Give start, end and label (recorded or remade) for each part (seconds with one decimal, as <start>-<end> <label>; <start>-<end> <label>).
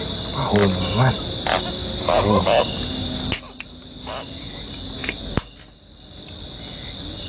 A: 0.0-1.8 recorded; 1.8-2.4 remade; 2.4-3.0 recorded; 3.0-4.6 remade; 4.6-5.0 recorded; 5.0-7.3 remade